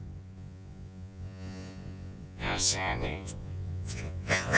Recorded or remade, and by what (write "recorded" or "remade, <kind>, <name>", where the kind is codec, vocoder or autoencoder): remade, vocoder, Vocos